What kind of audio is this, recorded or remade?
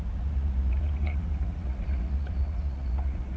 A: remade